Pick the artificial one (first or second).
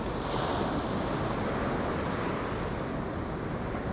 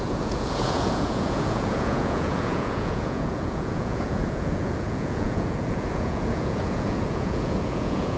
second